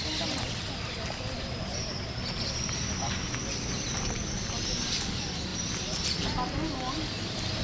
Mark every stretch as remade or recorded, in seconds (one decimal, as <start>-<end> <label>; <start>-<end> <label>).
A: 0.0-7.6 recorded